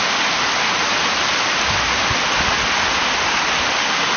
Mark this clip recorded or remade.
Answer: recorded